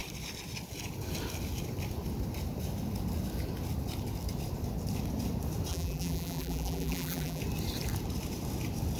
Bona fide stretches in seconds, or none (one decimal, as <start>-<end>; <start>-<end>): 0.0-5.7; 7.4-9.0